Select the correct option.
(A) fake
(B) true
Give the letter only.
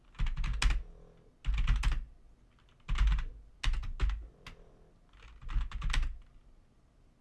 B